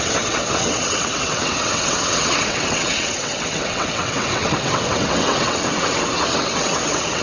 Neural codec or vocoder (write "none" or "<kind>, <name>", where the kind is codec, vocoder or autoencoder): vocoder, WaveNeXt